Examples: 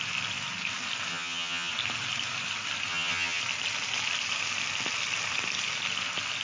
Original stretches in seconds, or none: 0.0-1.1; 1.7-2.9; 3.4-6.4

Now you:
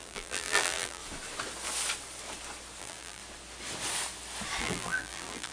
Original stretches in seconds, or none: 1.0-2.8; 3.2-4.6

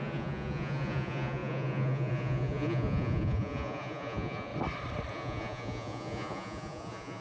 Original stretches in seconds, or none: 4.5-5.1

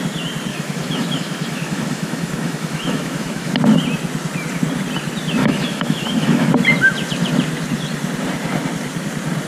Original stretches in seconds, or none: 0.0-0.5; 3.5-5.4; 6.5-9.5

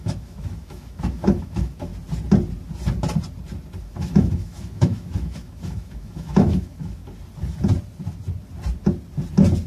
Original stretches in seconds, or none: 1.9-3.8; 7.0-9.7

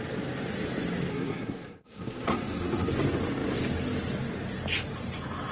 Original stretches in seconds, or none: 0.0-1.1; 2.9-5.5

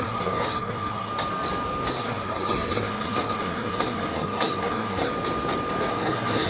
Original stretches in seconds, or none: 1.1-1.9; 5.1-5.9